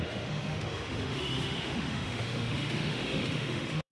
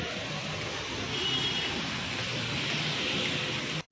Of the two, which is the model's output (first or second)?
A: first